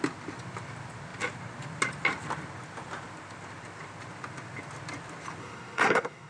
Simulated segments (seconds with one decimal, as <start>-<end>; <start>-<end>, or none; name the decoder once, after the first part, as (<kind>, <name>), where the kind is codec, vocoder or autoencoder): 5.4-6.3 (codec, SNAC)

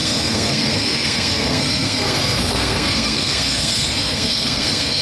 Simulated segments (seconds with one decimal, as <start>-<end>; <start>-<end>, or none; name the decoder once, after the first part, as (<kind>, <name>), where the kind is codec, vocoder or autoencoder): 0.0-5.0 (codec, SNAC)

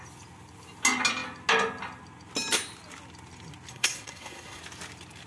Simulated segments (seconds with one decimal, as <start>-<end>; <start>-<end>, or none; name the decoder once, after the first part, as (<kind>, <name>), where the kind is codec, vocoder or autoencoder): 3.7-4.6 (codec, SNAC)

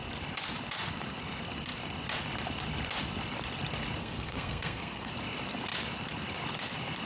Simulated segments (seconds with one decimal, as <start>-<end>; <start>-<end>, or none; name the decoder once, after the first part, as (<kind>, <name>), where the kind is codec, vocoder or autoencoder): 4.0-5.1 (codec, SNAC)

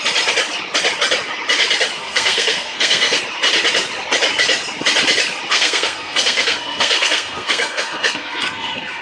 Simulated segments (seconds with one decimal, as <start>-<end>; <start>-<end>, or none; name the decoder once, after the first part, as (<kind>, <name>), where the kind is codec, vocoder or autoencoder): 2.0-3.2 (codec, SNAC); 5.5-9.0